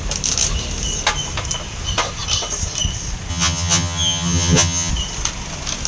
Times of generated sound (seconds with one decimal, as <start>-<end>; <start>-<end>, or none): 3.3-4.9